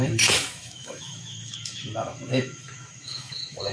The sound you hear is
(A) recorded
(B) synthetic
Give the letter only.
B